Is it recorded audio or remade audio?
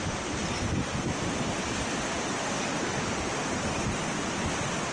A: recorded